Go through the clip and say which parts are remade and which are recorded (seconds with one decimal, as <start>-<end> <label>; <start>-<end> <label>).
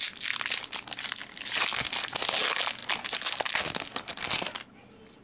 0.0-5.2 recorded